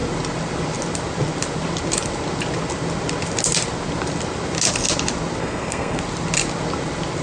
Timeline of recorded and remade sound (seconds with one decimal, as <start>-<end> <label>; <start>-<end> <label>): 0.0-5.4 recorded; 5.4-6.0 remade; 6.0-7.2 recorded